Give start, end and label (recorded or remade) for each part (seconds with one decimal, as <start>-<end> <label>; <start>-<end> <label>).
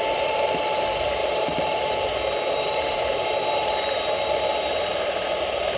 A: 0.0-5.8 remade